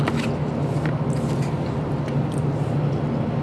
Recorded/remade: recorded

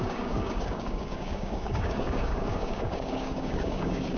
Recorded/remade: remade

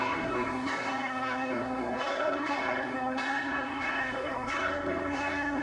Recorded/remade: remade